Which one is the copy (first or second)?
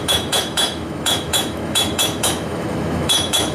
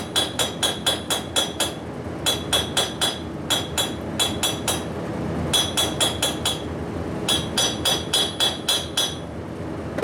first